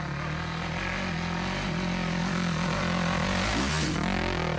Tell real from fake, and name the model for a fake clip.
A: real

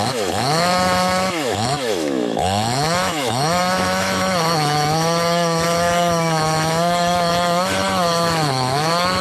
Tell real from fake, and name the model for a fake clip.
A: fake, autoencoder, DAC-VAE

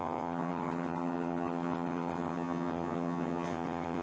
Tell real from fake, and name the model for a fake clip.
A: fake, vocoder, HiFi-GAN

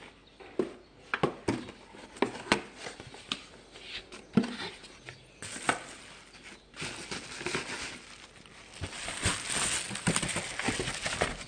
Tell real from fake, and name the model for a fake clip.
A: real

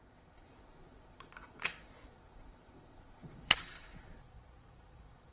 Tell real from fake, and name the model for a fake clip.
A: fake, vocoder, Vocos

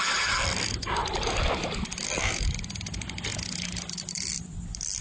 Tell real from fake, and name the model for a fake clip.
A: real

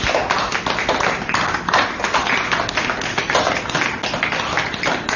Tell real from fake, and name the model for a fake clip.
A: real